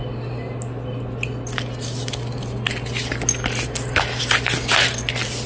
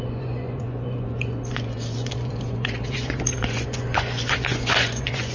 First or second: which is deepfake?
second